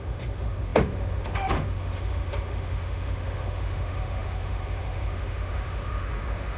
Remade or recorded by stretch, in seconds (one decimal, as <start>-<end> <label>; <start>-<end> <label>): 0.0-6.6 remade